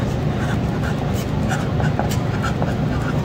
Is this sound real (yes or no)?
yes